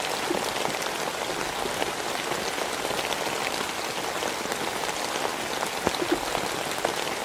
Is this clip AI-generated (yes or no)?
no